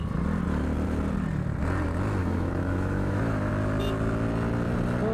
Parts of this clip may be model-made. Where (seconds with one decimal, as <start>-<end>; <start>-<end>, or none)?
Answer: 2.2-3.5